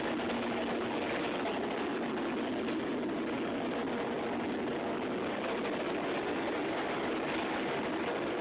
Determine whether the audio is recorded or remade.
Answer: recorded